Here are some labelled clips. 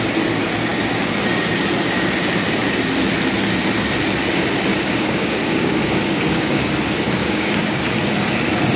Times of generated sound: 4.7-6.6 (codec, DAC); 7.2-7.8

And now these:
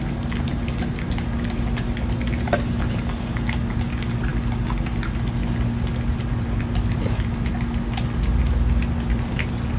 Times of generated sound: none